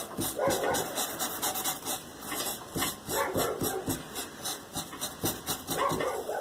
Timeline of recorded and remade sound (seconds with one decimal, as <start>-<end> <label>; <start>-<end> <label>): 0.0-6.4 recorded